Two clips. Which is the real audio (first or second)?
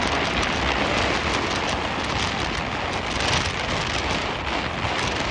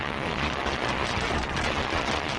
first